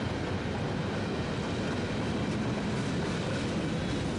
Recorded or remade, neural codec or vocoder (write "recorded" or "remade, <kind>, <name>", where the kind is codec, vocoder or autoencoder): recorded